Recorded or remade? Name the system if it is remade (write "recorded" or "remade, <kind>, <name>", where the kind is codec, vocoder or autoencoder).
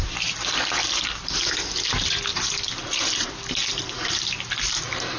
recorded